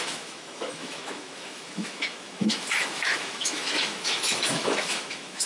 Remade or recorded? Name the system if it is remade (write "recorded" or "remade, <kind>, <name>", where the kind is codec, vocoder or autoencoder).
remade, autoencoder, DAC-VAE